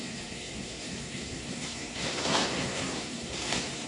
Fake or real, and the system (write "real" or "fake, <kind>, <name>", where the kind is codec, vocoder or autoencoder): fake, codec, SNAC